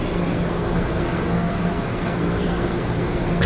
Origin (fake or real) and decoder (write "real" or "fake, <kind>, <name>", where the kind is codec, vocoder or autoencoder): fake, codec, SNAC